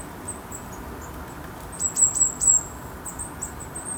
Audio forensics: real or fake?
real